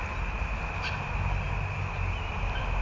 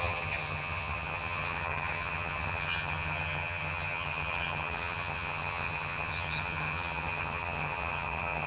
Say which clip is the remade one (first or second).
second